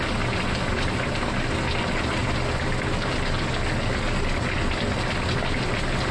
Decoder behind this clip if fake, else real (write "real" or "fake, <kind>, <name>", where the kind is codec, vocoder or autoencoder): real